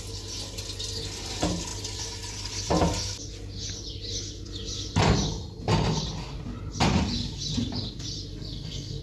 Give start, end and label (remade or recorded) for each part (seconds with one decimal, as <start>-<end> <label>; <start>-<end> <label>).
0.0-8.3 recorded; 8.3-9.0 remade